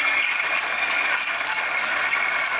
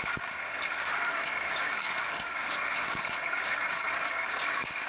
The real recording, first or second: first